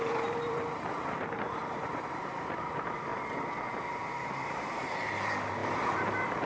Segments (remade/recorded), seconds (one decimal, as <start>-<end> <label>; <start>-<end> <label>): 0.0-3.1 remade; 3.1-3.8 recorded; 3.8-6.5 remade